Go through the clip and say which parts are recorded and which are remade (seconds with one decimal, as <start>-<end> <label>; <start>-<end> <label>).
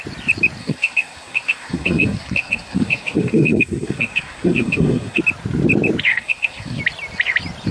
0.0-0.6 recorded; 0.6-5.2 remade; 5.2-6.1 recorded; 6.1-6.8 remade; 6.8-7.7 recorded